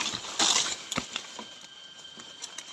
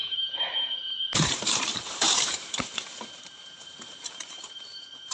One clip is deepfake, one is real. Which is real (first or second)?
first